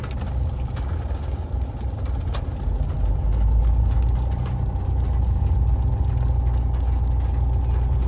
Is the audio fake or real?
real